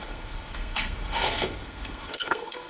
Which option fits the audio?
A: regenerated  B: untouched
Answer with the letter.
A